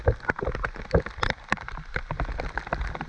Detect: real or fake real